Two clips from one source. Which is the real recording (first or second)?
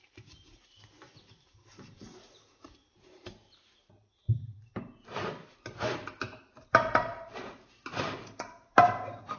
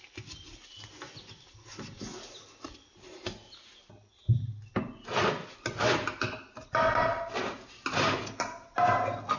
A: second